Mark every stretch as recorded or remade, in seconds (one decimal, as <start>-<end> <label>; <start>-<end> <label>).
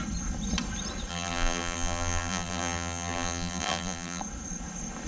0.0-1.1 recorded; 1.1-4.2 remade; 4.2-5.1 recorded